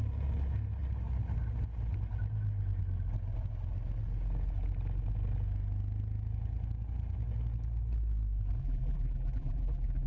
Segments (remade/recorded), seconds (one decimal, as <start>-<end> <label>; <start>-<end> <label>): 0.0-8.6 recorded; 8.6-10.1 remade